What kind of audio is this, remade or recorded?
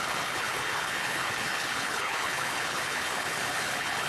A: remade